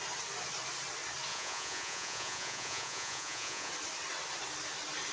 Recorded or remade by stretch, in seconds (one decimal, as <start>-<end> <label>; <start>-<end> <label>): 0.0-1.3 recorded; 1.3-3.7 remade; 3.7-5.1 recorded

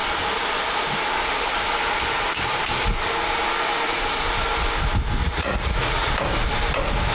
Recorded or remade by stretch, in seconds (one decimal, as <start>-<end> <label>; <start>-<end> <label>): 0.0-5.2 recorded; 5.2-6.1 remade; 6.1-7.1 recorded

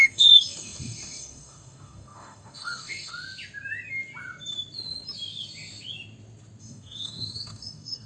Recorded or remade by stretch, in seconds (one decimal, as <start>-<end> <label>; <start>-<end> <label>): 0.0-3.1 remade; 3.1-6.6 recorded; 6.6-8.1 remade

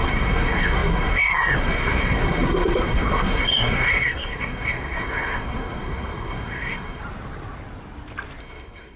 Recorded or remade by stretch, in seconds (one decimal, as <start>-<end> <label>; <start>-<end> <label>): 0.0-7.0 remade; 7.0-8.4 recorded; 8.4-9.0 remade

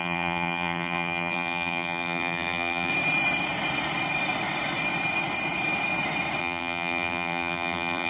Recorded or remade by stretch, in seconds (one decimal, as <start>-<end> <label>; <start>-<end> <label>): 0.0-2.9 remade; 2.9-6.4 recorded; 6.4-8.1 remade